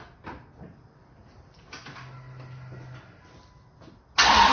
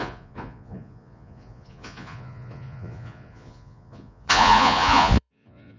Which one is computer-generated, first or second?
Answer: second